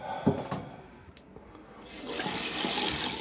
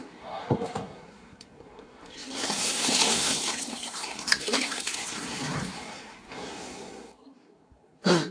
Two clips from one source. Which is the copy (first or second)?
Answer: second